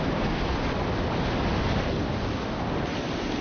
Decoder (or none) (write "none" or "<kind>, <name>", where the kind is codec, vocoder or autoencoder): none